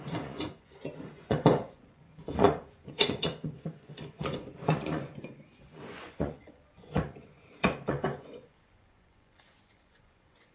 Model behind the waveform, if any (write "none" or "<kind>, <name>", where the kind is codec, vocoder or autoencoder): vocoder, Vocos